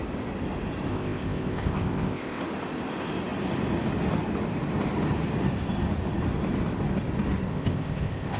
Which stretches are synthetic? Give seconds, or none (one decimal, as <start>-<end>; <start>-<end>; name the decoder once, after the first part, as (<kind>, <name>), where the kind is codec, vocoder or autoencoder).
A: 0.9-2.4 (codec, ZipCodec); 7.5-8.4